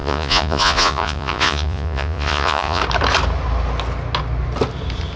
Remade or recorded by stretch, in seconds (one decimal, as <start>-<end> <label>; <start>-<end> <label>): 0.0-2.8 remade; 2.8-5.2 recorded